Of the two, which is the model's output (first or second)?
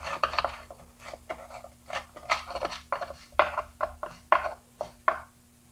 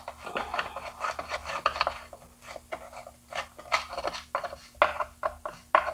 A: first